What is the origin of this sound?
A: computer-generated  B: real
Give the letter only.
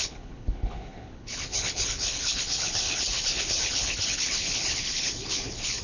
A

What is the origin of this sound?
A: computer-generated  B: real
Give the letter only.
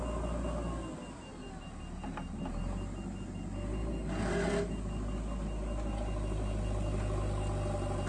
B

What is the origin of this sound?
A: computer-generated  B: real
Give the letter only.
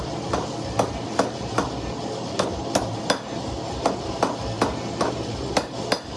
B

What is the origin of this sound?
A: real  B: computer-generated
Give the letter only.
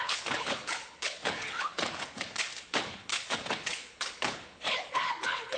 B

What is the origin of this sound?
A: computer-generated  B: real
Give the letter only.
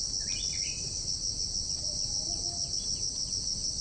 B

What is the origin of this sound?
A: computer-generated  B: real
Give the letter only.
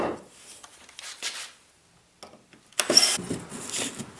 B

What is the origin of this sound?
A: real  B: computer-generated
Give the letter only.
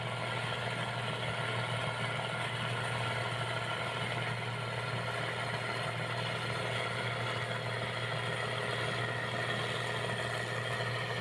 A